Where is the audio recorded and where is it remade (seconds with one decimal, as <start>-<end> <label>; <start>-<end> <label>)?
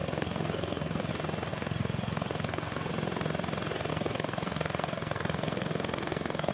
0.0-1.1 remade; 1.1-1.5 recorded; 1.5-2.9 remade; 2.9-3.9 recorded; 3.9-6.5 remade